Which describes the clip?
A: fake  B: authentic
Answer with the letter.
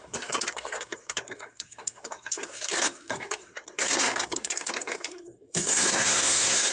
A